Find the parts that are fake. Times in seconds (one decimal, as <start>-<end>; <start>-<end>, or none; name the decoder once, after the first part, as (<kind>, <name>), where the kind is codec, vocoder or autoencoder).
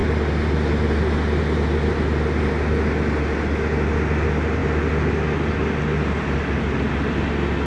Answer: none